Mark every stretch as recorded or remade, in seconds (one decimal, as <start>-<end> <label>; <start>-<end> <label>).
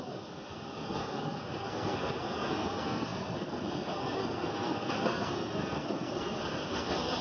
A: 0.0-7.2 remade